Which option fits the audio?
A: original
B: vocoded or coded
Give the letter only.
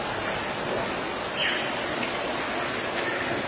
A